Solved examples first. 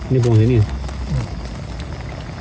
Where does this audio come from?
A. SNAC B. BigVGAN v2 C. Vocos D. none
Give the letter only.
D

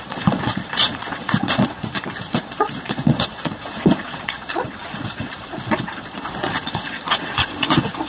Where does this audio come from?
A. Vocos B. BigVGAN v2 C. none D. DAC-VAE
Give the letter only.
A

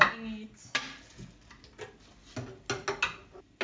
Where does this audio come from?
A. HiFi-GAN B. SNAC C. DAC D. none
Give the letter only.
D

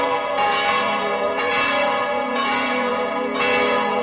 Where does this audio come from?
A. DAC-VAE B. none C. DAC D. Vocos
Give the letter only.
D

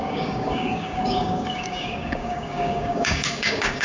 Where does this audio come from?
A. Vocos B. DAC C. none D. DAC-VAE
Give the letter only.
B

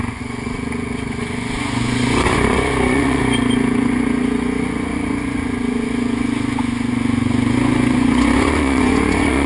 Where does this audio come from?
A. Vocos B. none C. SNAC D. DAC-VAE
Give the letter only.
A